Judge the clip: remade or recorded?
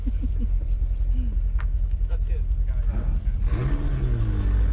recorded